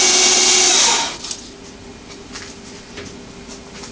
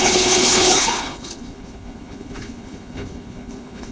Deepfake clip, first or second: second